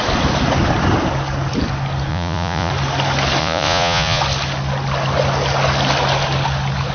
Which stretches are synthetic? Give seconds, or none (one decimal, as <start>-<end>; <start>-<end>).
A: 2.1-2.7; 3.4-4.2

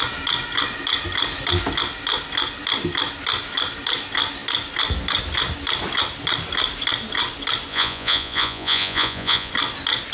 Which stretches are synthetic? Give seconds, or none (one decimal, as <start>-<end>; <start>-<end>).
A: 7.7-9.5